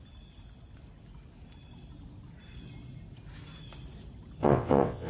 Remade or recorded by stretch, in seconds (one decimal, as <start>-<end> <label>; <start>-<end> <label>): 0.0-4.4 recorded; 4.4-5.1 remade